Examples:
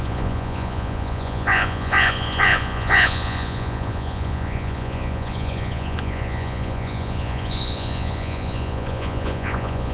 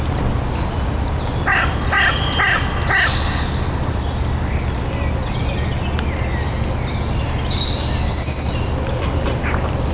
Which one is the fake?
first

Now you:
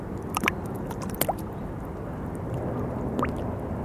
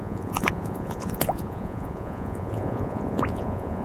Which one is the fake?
second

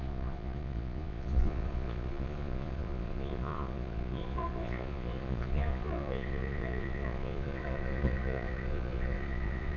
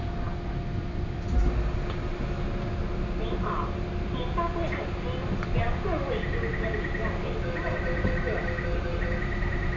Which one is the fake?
first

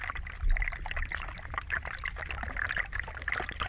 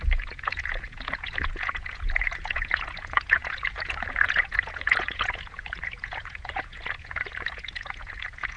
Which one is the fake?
second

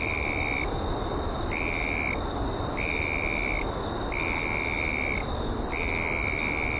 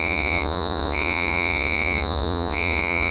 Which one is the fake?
second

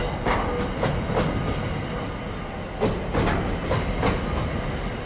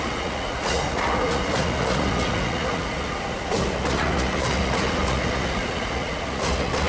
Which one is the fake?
second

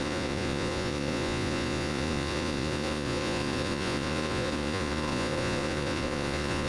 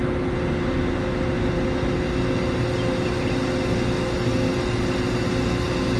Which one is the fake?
first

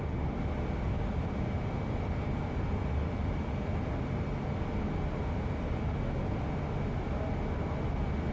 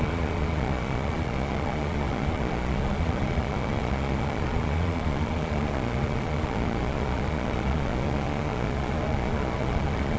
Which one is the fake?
second